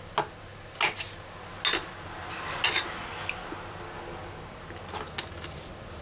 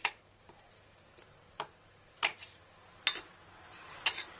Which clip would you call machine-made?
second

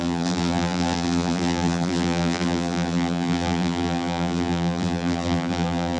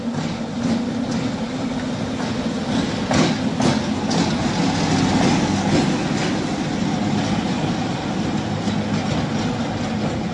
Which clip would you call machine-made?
first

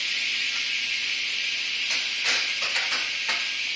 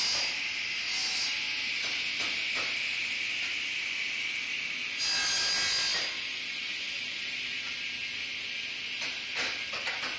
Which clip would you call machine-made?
first